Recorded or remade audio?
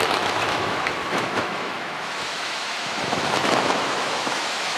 remade